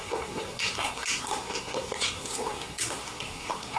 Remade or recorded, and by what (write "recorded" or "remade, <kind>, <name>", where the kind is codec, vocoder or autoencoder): remade, codec, SNAC